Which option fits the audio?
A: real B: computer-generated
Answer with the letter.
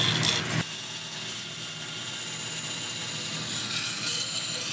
A